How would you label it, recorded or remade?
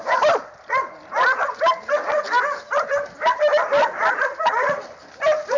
recorded